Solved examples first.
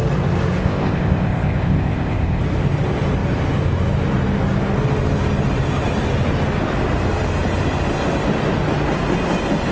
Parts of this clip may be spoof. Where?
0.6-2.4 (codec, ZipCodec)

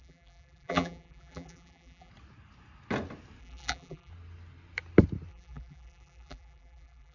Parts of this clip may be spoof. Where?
0.0-2.1 (vocoder, BigVGAN v2); 3.4-4.1; 5.3-7.1

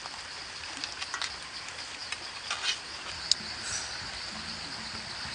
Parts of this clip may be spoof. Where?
none

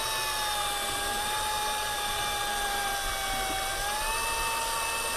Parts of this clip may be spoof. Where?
1.1-2.9 (vocoder, BigVGAN v2)